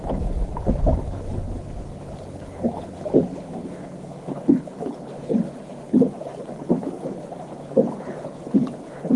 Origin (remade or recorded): remade